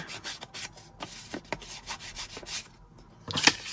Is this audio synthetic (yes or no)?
no